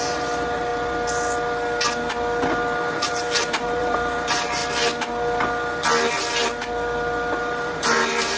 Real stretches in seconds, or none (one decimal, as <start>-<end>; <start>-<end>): 0.7-2.9; 4.6-7.4